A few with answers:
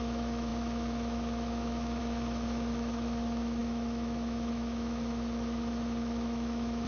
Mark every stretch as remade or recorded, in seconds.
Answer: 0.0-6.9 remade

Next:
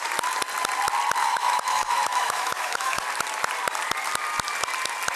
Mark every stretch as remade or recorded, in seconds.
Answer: 0.0-1.2 recorded; 1.2-3.0 remade; 3.0-5.2 recorded

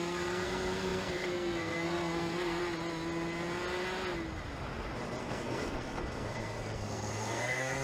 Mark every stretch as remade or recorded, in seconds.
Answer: 0.0-2.6 remade; 2.6-5.2 recorded; 5.2-7.8 remade

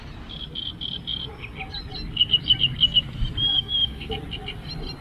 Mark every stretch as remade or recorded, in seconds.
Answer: 0.0-3.5 recorded; 3.5-4.1 remade; 4.1-5.0 recorded

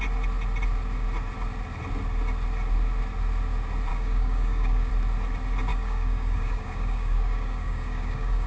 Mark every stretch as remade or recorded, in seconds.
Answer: 0.0-3.9 recorded; 3.9-4.9 remade; 4.9-5.7 recorded; 5.7-8.5 remade

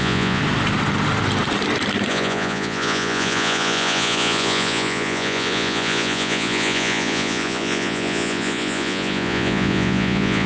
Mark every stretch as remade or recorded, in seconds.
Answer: 0.0-0.4 remade; 0.4-2.1 recorded; 2.1-10.5 remade